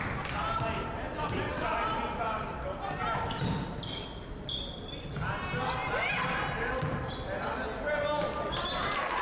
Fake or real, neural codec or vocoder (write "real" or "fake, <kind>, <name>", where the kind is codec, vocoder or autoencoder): real